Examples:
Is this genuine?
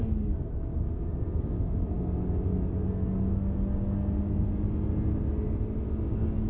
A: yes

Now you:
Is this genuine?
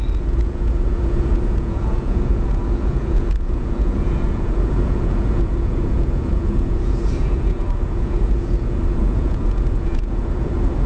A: no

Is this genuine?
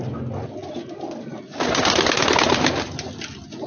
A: yes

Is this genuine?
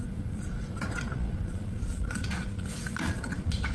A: no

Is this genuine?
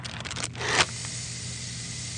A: yes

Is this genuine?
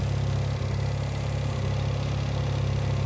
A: yes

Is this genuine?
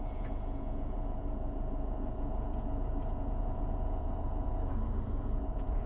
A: no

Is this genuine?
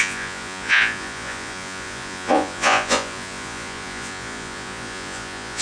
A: no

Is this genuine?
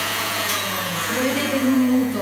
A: no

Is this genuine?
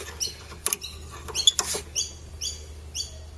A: yes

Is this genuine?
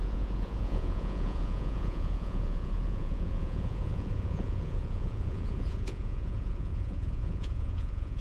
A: no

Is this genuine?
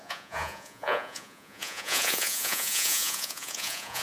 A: no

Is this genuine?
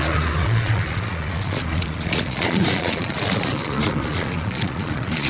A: no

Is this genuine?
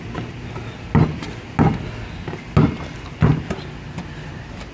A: yes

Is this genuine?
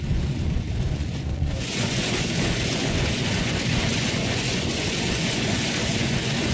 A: no